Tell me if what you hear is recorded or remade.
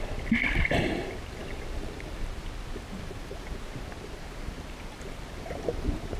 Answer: recorded